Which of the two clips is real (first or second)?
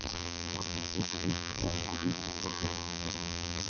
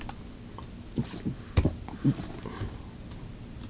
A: second